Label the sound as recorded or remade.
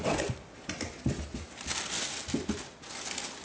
recorded